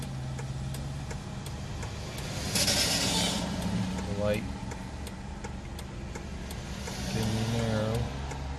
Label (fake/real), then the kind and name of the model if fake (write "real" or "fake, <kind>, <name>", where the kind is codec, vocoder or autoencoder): real